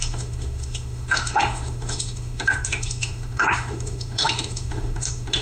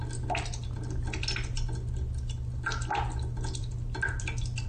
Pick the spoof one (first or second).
first